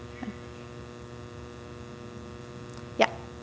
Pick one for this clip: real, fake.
real